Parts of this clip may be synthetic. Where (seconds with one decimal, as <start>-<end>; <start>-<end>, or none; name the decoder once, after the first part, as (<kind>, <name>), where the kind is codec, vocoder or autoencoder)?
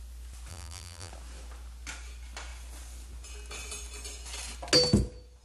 0.5-1.1 (vocoder, BigVGAN v2)